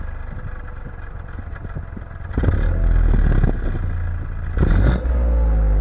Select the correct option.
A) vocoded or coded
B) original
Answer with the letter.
B